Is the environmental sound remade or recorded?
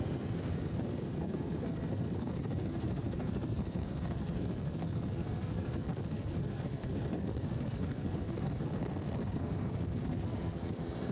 remade